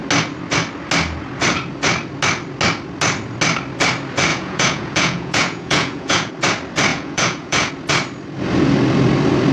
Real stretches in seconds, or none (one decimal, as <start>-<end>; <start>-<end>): 0.0-4.3; 6.3-6.9; 7.7-9.5